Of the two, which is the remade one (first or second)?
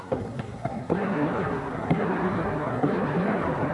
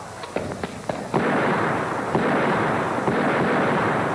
first